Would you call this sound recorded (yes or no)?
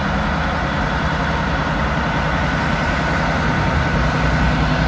no